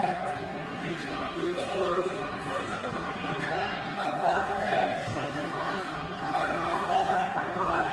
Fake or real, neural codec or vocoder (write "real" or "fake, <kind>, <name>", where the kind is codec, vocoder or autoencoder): fake, codec, SNAC